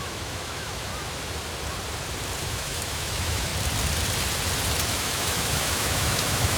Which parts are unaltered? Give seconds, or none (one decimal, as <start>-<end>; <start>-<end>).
0.9-2.4; 3.5-4.9